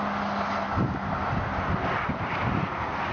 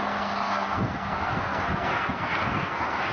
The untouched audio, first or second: first